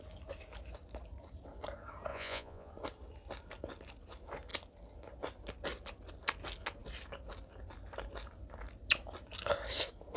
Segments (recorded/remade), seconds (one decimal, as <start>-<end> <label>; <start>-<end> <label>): 0.0-2.1 recorded; 2.1-2.7 remade; 2.7-10.2 recorded